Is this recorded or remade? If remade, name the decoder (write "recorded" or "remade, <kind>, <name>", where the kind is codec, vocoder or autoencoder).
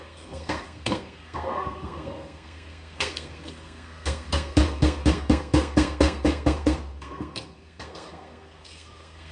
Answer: remade, codec, SNAC